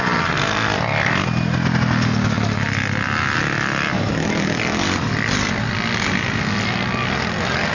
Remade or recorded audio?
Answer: recorded